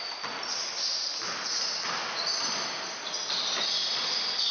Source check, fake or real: real